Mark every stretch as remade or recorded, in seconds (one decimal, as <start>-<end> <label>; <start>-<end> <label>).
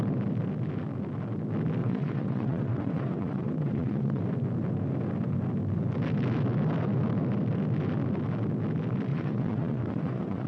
0.0-1.8 recorded; 1.8-4.2 remade; 4.2-9.1 recorded; 9.1-10.5 remade